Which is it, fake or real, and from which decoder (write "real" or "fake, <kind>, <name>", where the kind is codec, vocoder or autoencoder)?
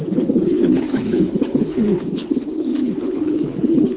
fake, codec, HILCodec